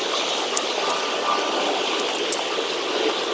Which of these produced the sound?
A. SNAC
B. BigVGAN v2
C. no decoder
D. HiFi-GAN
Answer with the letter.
C